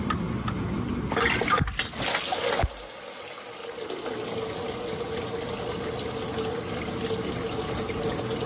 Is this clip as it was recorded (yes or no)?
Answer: yes